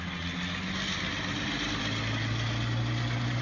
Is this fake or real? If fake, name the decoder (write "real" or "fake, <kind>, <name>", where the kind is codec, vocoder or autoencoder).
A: real